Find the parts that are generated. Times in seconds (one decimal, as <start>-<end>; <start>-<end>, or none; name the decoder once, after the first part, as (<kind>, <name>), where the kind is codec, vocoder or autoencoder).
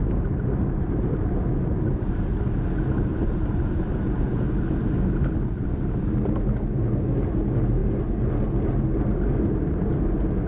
3.1-4.3 (vocoder, BigVGAN v2)